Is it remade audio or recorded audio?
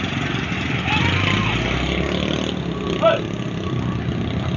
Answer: recorded